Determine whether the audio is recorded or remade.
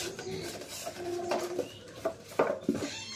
recorded